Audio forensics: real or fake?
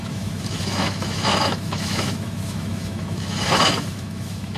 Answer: fake